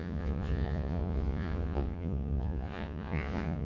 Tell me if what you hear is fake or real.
fake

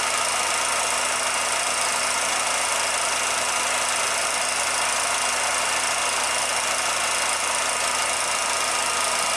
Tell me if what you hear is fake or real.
real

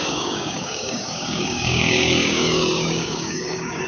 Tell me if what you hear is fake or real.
fake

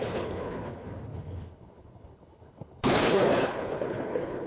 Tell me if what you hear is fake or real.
fake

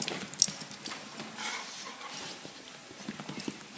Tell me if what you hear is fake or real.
real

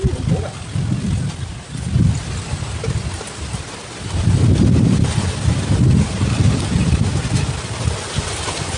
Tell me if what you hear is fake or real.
real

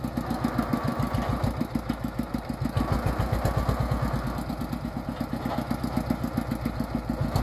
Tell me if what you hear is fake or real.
real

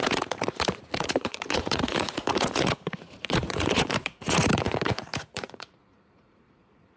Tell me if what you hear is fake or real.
fake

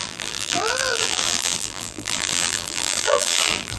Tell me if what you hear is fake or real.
fake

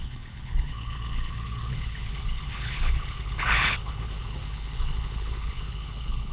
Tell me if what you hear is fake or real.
fake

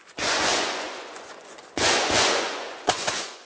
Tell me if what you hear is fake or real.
fake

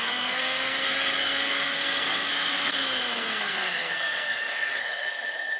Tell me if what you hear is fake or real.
fake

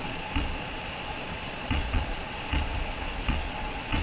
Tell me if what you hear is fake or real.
fake